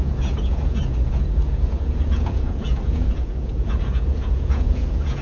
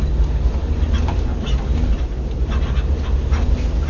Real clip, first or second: second